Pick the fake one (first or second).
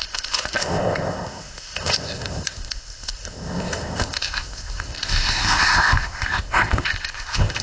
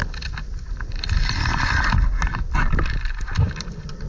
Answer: first